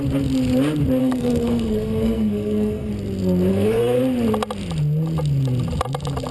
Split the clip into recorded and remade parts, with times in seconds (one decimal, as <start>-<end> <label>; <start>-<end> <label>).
0.0-1.0 recorded; 1.0-2.9 remade; 2.9-3.5 recorded; 3.5-4.0 remade; 4.0-6.3 recorded